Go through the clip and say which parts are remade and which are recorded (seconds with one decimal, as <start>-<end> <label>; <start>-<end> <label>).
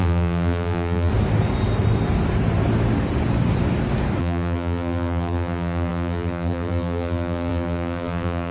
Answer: 0.0-1.1 remade; 1.1-4.2 recorded; 4.2-8.5 remade